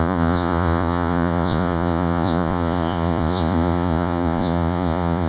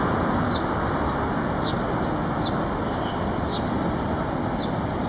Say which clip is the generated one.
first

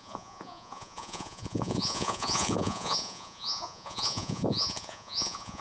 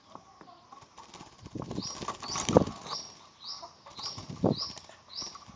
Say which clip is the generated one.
first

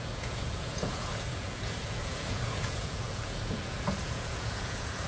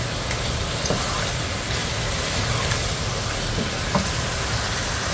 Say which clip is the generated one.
first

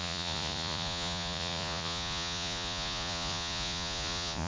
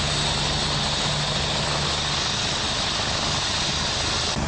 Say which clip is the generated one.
first